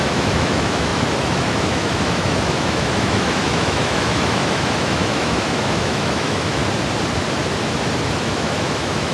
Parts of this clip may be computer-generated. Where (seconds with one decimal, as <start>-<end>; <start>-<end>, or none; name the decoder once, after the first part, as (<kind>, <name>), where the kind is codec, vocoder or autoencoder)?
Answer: 0.0-6.6 (autoencoder, DAC-VAE); 8.2-9.1